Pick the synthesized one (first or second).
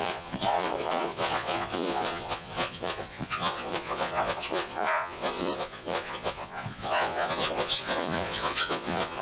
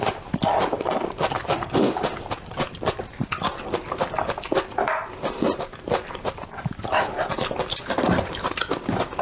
first